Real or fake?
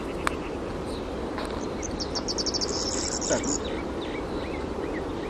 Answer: real